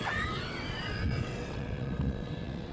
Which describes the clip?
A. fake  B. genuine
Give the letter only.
A